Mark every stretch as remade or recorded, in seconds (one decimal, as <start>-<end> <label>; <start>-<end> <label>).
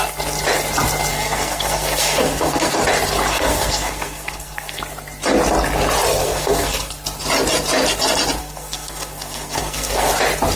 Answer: 0.0-1.1 recorded; 1.1-2.7 remade; 2.7-3.3 recorded; 3.3-4.8 remade; 4.8-6.2 recorded; 6.2-6.9 remade; 6.9-8.4 recorded; 8.4-10.1 remade; 10.1-10.6 recorded